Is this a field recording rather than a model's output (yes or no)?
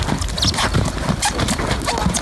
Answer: yes